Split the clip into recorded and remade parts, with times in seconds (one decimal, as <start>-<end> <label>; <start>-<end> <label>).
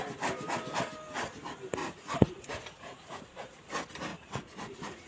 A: 0.0-1.8 recorded; 1.8-3.6 remade; 3.6-4.1 recorded; 4.1-5.1 remade